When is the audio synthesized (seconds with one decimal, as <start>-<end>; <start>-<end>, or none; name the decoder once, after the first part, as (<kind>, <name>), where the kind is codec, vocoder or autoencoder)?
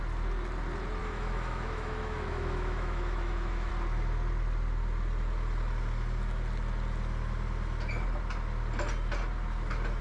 1.0-3.7 (autoencoder, DAC-VAE)